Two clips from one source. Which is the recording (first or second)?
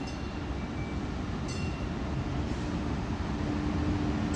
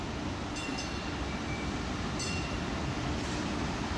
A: first